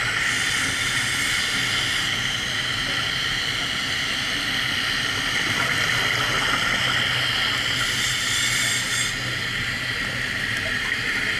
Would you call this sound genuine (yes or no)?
yes